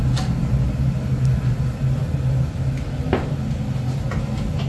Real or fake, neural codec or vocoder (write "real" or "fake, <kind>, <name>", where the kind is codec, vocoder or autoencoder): real